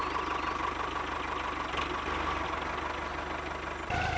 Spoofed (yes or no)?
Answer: no